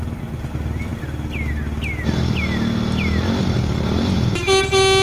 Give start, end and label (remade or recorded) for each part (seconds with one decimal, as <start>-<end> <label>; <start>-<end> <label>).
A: 0.0-5.0 recorded